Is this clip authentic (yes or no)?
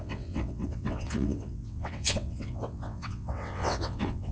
no